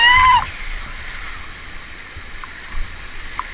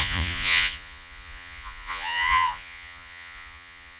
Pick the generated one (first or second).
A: second